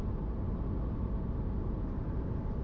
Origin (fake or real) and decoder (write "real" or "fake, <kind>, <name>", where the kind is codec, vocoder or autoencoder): real